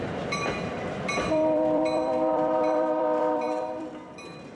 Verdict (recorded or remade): remade